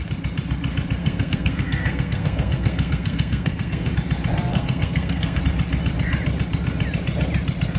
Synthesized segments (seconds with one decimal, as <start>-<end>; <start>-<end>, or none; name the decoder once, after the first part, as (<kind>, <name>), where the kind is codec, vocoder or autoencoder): 1.0-3.9 (codec, SNAC); 4.5-5.4

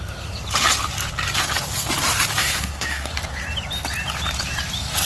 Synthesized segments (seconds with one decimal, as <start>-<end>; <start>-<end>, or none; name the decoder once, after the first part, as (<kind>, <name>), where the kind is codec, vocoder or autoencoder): 2.4-3.1 (codec, SNAC)

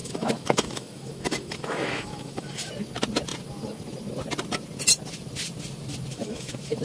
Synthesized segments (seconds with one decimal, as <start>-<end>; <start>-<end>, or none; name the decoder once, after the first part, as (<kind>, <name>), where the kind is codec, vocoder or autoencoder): 0.0-2.7 (autoencoder, DAC-VAE); 6.1-6.8